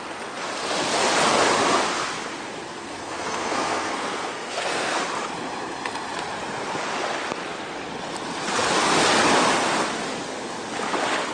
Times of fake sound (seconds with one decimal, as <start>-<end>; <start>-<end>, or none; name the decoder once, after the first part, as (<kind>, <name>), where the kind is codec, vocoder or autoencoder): 2.7-5.0 (codec, SNAC)